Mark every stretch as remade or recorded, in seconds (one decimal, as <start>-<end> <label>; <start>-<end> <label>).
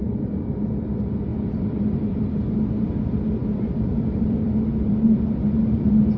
0.0-1.3 recorded; 1.3-2.3 remade; 2.3-3.4 recorded; 3.4-5.4 remade; 5.4-6.2 recorded